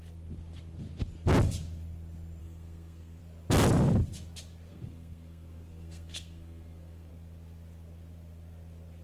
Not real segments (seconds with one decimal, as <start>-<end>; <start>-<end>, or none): 2.4-3.2; 4.7-7.1